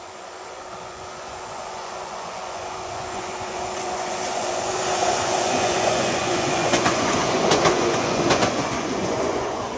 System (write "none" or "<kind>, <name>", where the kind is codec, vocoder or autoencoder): vocoder, Vocos